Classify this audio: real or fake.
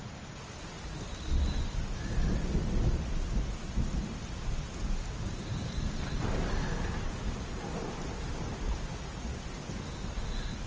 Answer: real